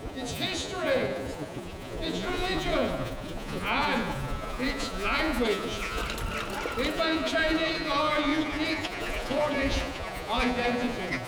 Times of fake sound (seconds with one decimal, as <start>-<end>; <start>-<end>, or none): 0.0-6.0; 6.9-11.3

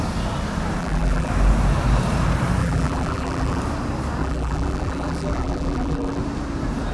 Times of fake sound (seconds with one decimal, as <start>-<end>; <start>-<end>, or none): 0.8-1.3; 2.6-3.6; 4.2-6.2

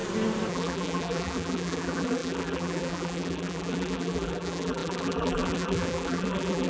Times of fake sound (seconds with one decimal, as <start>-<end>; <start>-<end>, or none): 0.5-6.7

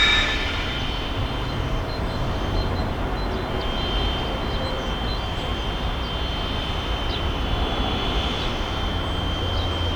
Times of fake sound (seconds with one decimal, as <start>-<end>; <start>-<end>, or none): 0.0-2.8; 3.5-5.5; 6.3-10.0

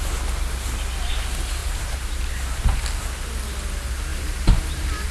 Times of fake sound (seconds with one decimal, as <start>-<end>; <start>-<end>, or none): 1.6-2.9; 4.1-5.1

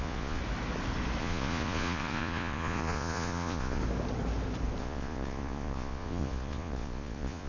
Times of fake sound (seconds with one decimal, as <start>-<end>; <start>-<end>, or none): 0.0-0.4; 1.2-3.8; 4.8-7.5

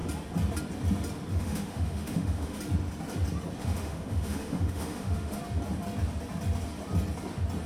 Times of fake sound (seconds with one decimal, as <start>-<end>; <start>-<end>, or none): 1.3-2.6; 3.6-5.4